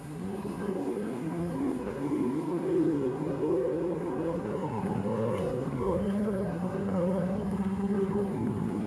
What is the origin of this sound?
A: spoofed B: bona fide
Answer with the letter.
A